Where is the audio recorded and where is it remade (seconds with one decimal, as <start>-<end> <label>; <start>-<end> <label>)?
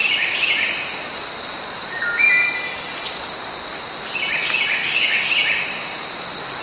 0.0-4.8 recorded; 4.8-5.3 remade; 5.3-6.6 recorded